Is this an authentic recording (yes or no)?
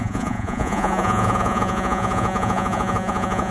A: no